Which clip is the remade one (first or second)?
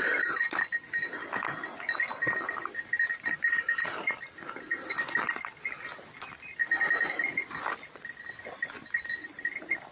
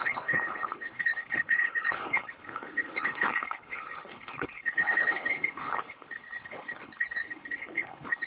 second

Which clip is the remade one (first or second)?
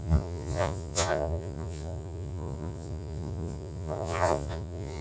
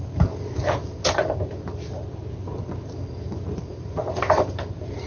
first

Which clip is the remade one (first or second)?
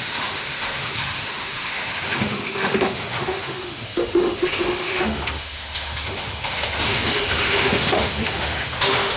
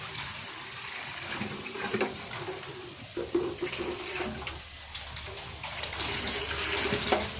first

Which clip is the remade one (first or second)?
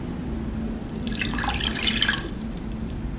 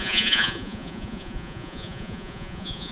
second